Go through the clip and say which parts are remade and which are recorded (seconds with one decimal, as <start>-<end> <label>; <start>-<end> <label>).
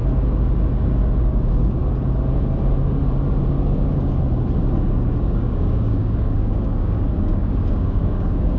0.0-1.2 recorded; 1.2-1.8 remade; 1.8-5.2 recorded; 5.2-8.6 remade